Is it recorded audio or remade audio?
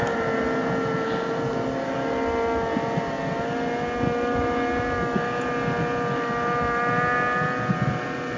recorded